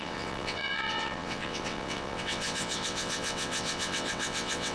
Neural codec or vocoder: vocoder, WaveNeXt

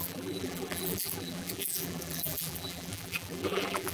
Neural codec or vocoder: vocoder, BigVGAN v2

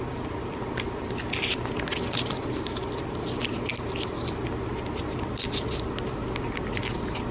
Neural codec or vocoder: none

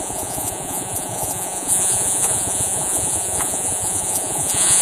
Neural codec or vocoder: vocoder, Vocos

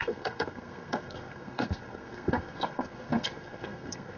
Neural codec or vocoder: codec, SNAC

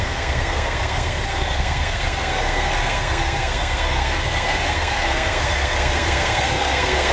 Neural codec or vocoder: codec, SNAC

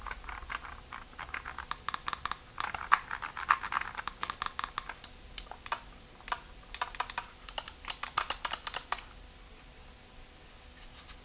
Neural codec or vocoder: none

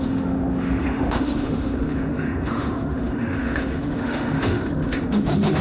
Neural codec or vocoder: autoencoder, DAC-VAE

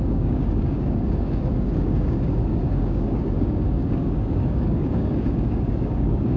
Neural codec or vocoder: codec, DAC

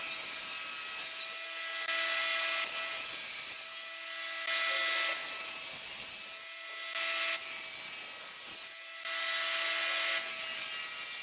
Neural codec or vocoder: none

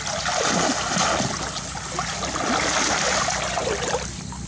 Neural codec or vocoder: none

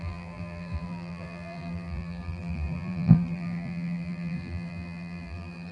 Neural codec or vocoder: vocoder, BigVGAN v2